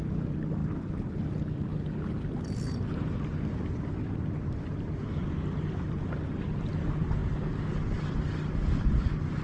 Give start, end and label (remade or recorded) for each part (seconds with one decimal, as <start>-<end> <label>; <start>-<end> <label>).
0.0-9.4 recorded